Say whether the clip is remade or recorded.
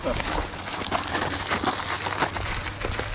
recorded